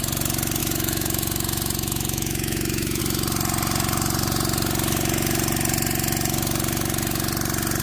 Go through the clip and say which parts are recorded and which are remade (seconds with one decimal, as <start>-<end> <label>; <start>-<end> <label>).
0.0-0.6 recorded; 0.6-3.0 remade; 3.0-7.8 recorded